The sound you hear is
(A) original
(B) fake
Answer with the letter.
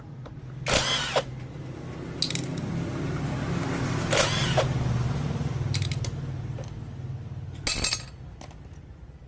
A